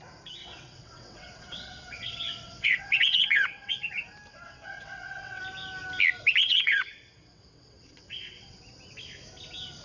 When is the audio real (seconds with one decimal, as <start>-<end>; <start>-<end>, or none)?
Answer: 0.0-0.4; 3.7-4.3; 5.4-6.4; 8.6-9.8